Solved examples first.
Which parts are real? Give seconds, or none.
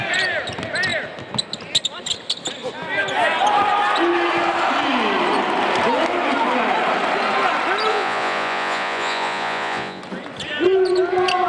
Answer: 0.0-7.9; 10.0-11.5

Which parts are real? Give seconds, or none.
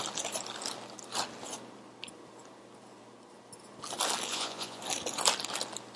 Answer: 0.0-4.3; 4.8-6.0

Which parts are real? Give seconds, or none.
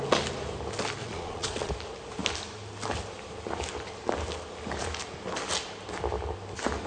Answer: 0.0-1.0; 1.7-6.9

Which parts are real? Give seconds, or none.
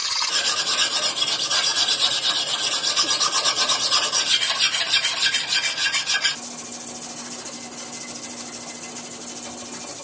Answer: 0.6-10.0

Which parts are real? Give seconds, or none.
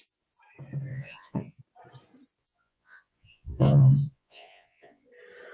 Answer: 0.0-0.9; 1.6-2.4; 5.1-5.5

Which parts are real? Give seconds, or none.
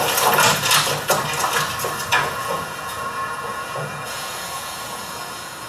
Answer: 0.0-2.1